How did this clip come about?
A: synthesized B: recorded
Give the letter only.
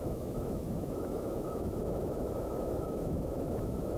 A